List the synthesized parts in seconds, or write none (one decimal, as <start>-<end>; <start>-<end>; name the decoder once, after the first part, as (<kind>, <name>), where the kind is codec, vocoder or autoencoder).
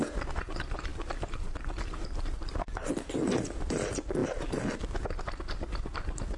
0.9-3.1 (vocoder, BigVGAN v2)